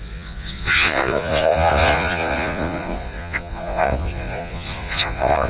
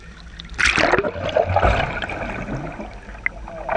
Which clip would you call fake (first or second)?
first